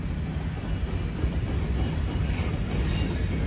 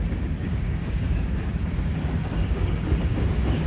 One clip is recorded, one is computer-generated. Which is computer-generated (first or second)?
second